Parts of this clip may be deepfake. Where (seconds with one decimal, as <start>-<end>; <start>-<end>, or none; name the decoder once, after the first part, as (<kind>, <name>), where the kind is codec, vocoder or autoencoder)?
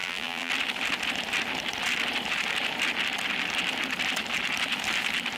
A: 0.0-0.5 (vocoder, BigVGAN v2)